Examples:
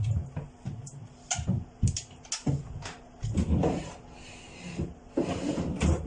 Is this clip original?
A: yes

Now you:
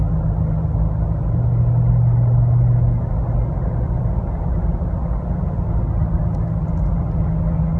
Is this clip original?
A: yes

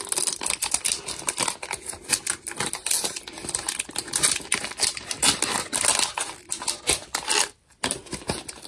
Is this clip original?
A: yes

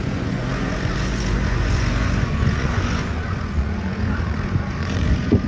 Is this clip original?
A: no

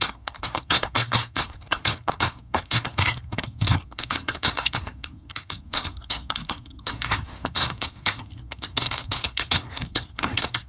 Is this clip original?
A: no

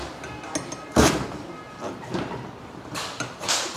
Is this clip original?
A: yes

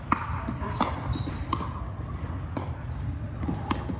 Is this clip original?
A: yes